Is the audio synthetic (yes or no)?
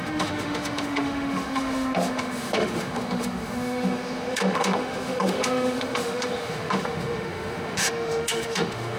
yes